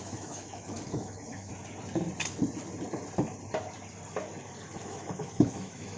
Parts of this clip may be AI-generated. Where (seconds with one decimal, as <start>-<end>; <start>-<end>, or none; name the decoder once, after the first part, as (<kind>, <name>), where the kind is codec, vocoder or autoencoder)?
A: 0.0-1.5 (autoencoder, DAC-VAE); 4.8-6.0